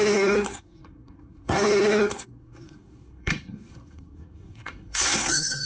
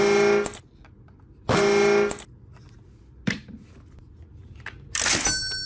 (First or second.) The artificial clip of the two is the first